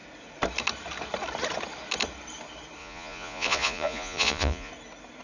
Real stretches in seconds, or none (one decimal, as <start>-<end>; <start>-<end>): 0.0-2.8; 4.7-5.2